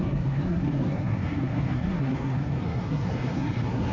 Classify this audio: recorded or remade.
remade